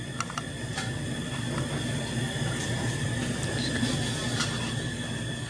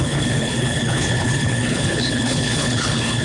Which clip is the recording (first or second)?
first